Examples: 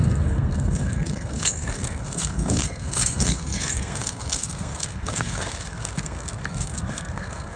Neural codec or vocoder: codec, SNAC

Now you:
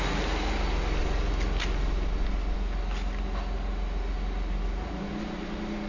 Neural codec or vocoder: none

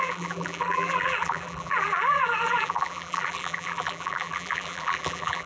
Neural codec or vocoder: vocoder, BigVGAN v2